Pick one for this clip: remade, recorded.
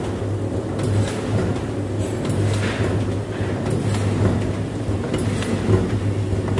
recorded